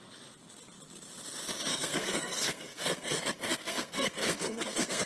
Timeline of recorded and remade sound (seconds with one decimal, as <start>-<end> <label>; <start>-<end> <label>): 0.0-1.7 recorded; 1.7-5.1 remade